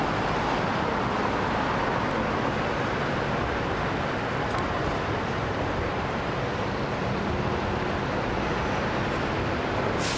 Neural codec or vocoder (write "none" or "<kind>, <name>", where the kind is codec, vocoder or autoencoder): none